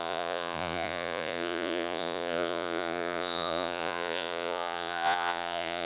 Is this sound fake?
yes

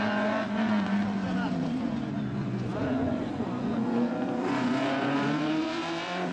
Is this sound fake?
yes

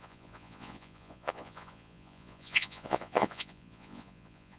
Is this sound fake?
yes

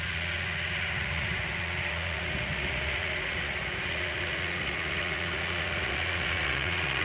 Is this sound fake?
yes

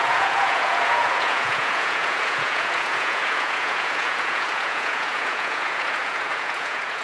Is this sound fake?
yes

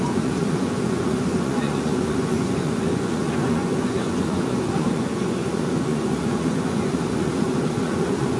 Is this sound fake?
yes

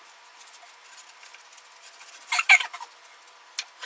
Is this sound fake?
no